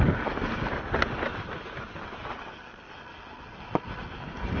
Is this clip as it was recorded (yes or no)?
yes